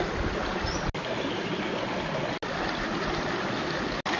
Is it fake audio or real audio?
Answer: real